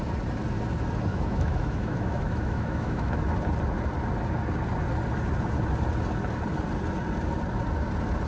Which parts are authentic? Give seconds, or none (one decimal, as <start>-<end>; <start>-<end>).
0.0-1.1; 3.2-8.3